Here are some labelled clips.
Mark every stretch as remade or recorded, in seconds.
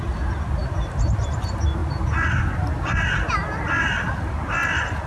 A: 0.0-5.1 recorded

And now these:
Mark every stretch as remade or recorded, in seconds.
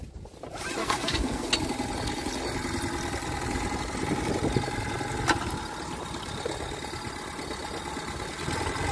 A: 0.0-0.8 recorded; 0.8-1.5 remade; 1.5-8.9 recorded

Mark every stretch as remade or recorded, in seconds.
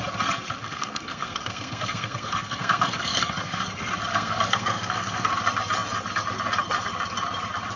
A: 0.0-0.6 recorded; 0.6-3.6 remade; 3.6-4.1 recorded; 4.1-5.3 remade; 5.3-7.8 recorded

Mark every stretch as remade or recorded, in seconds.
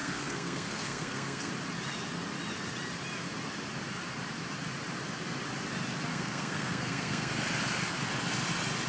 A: 0.0-1.5 remade; 1.5-6.1 recorded; 6.1-7.3 remade; 7.3-8.9 recorded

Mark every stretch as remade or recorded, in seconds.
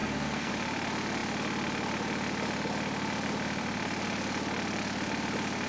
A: 0.0-0.5 remade; 0.5-5.7 recorded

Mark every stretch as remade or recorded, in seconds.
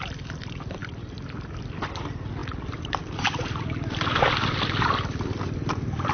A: 0.0-6.1 recorded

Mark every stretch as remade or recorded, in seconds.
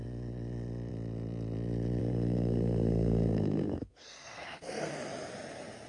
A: 0.0-2.0 recorded; 2.0-4.9 remade; 4.9-5.9 recorded